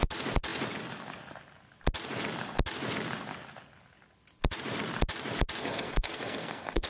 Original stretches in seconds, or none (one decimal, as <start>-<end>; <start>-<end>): 0.0-5.6